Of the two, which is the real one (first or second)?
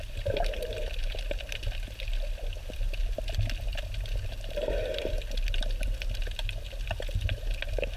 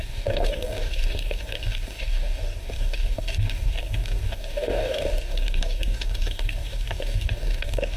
first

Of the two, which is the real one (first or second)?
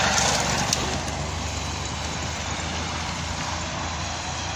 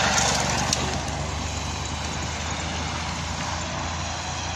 second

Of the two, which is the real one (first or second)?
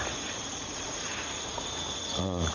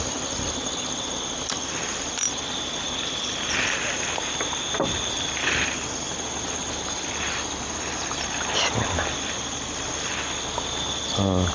second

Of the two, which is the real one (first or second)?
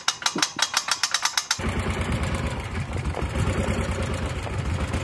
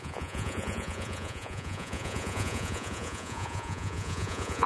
first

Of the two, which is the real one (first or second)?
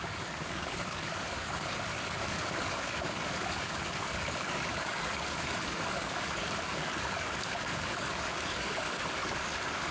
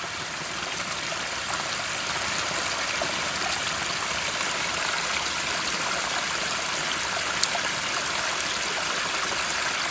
second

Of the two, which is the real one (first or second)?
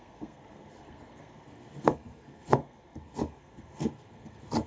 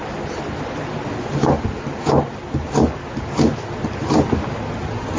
second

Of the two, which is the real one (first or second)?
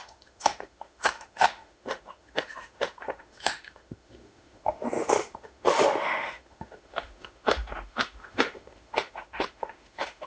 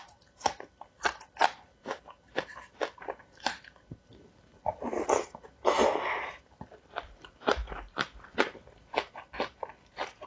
second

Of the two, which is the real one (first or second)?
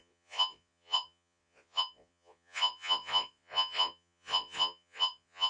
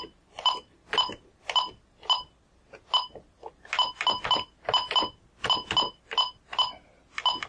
second